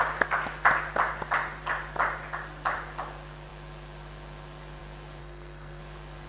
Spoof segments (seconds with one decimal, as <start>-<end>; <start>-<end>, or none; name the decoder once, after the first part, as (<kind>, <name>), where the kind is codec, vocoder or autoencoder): 5.2-5.8 (codec, SNAC)